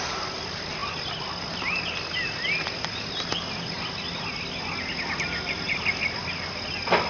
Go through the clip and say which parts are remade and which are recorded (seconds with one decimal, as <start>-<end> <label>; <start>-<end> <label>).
0.0-7.1 recorded